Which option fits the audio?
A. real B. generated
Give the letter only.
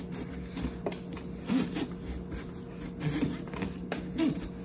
A